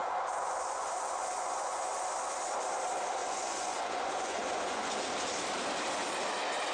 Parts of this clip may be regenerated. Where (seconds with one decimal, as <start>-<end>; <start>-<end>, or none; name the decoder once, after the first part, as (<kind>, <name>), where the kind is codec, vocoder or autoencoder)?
0.0-1.9 (vocoder, Vocos); 3.2-4.9